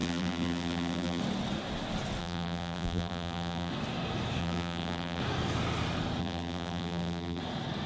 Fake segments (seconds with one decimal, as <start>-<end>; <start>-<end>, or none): 0.0-1.2; 2.2-3.7; 4.4-5.2; 6.2-7.4

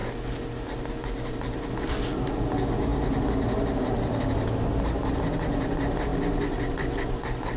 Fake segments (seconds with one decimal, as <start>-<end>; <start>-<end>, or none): 0.0-0.9